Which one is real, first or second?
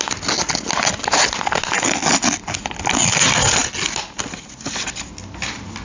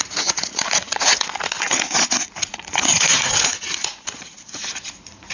first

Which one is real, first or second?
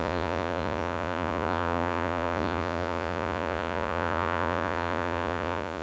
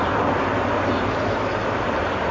second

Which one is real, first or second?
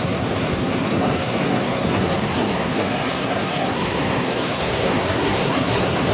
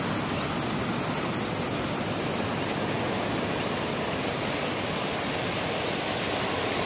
second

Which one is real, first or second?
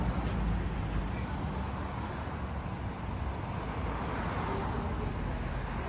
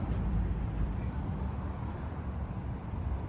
first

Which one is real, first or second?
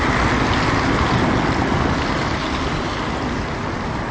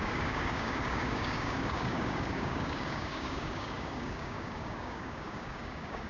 first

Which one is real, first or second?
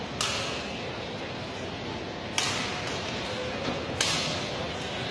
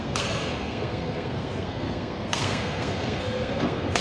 first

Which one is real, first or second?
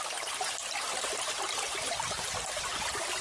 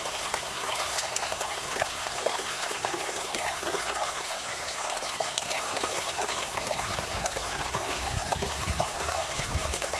first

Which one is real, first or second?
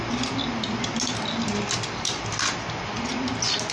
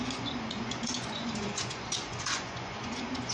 first